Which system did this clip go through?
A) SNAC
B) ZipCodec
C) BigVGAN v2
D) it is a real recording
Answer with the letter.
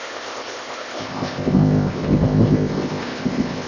B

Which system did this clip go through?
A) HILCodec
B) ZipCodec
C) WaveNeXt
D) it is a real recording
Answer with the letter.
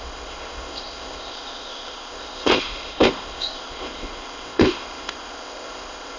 B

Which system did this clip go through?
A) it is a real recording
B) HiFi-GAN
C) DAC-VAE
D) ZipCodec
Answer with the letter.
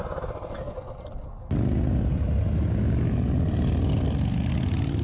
A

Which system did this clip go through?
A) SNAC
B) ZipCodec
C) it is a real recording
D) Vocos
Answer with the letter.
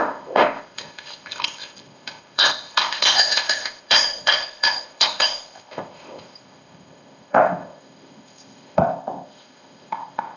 B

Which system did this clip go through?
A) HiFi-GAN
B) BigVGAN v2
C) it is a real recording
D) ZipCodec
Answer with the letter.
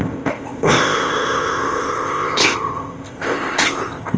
D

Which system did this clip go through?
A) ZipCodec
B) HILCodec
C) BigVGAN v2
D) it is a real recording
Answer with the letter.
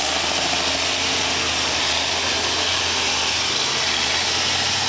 D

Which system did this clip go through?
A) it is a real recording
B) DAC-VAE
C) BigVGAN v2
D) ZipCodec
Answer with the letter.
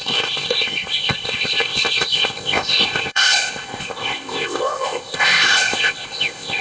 D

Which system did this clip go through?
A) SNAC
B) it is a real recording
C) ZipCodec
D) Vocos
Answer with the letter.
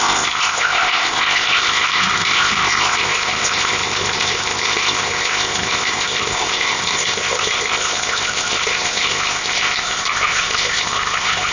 C